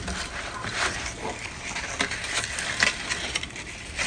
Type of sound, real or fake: real